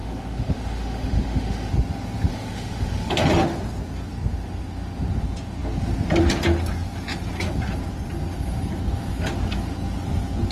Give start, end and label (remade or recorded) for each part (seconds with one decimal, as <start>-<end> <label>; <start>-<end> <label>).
0.0-1.7 remade; 1.7-2.3 recorded; 2.3-3.1 remade; 3.1-10.5 recorded